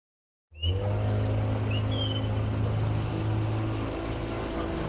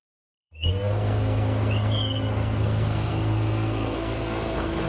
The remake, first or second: second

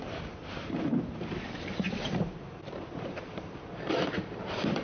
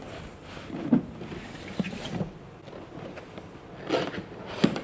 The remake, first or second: first